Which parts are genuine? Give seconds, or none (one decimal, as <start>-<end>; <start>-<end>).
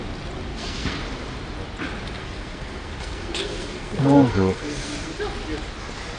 0.0-0.5; 1.0-2.2; 5.2-6.2